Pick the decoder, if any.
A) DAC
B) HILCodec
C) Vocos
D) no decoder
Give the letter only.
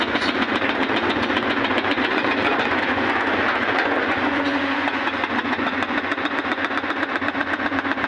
C